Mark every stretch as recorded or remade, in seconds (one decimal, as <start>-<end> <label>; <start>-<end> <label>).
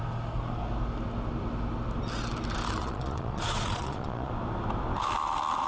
0.0-2.8 recorded; 2.8-4.3 remade; 4.3-5.7 recorded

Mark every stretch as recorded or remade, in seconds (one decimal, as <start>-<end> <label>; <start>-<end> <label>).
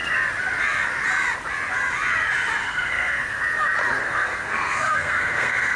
0.0-2.6 recorded; 2.6-3.4 remade; 3.4-4.0 recorded; 4.0-5.8 remade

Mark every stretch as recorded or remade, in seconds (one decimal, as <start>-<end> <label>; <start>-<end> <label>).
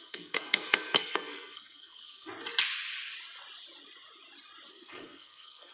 0.0-2.3 remade; 2.3-4.7 recorded; 4.7-5.7 remade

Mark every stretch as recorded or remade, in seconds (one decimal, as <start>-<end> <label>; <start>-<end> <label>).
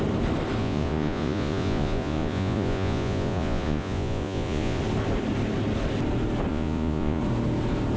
0.0-0.6 recorded; 0.6-4.8 remade; 4.8-6.5 recorded; 6.5-7.2 remade; 7.2-8.0 recorded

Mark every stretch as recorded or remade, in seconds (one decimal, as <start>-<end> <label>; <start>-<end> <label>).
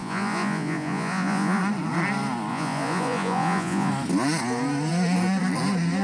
0.0-1.6 remade; 1.6-2.5 recorded; 2.5-3.9 remade; 3.9-6.0 recorded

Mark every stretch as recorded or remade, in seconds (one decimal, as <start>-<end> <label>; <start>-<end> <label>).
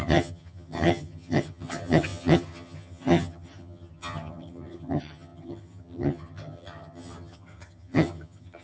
0.0-8.6 remade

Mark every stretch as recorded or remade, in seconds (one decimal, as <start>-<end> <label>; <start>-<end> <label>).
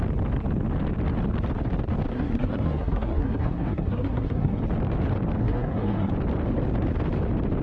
0.0-2.1 recorded; 2.1-4.6 remade; 4.6-5.4 recorded; 5.4-6.1 remade; 6.1-7.6 recorded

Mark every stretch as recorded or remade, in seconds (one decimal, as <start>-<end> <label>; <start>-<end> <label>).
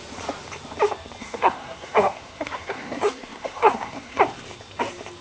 0.0-1.2 recorded; 1.2-4.2 remade; 4.2-5.2 recorded